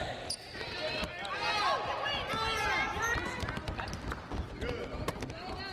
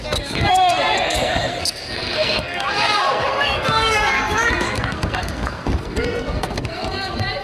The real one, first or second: first